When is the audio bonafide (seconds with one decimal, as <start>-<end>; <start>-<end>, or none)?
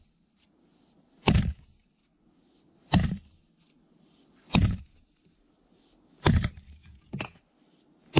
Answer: 0.0-6.8; 7.4-8.2